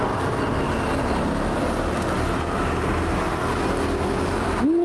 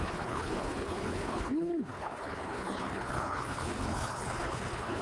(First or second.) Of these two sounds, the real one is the first